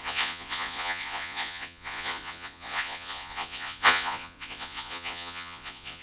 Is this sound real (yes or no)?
no